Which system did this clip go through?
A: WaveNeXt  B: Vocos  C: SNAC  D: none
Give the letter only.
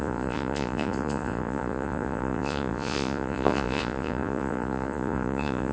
B